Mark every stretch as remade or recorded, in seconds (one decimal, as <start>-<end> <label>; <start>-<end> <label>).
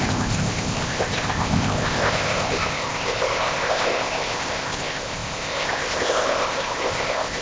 0.0-7.4 remade